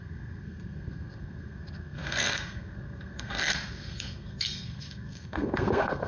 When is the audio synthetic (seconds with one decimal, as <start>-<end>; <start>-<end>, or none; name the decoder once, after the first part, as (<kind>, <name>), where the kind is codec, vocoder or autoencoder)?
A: 0.0-6.1 (codec, SNAC)

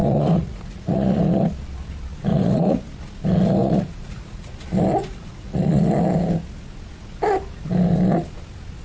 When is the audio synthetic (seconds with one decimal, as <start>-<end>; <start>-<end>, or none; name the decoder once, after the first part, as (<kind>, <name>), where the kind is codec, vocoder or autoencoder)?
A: 0.0-1.2 (vocoder, Vocos); 2.3-2.8; 3.6-4.5; 5.0-5.9

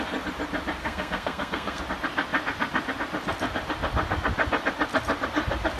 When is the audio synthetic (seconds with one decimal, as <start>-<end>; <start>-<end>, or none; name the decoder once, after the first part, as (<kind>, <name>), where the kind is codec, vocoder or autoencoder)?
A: 0.8-1.8 (codec, SNAC)

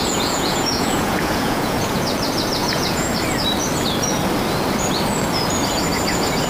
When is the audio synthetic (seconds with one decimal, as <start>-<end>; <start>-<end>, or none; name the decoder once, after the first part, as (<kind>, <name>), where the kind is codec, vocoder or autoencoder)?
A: 0.0-2.0 (vocoder, Vocos); 2.6-3.1